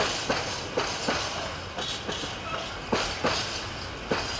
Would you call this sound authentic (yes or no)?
yes